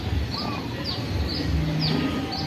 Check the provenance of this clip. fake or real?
real